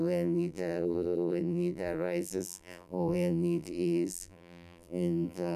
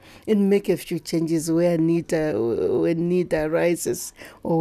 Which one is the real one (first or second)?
second